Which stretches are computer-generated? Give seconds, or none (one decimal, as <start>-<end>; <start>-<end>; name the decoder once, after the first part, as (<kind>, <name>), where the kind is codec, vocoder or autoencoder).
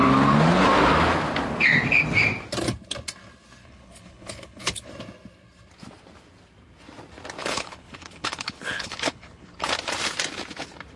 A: 3.6-4.9 (codec, HILCodec); 7.4-9.7